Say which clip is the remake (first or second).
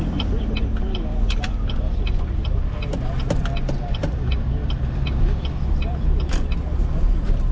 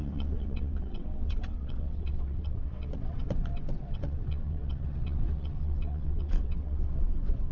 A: second